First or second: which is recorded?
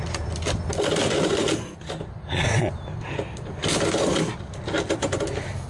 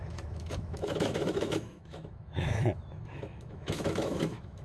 first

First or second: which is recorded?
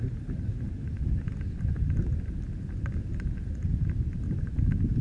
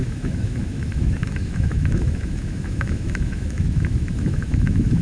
first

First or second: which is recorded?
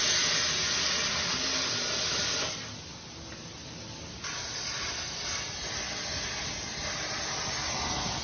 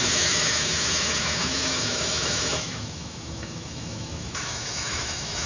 first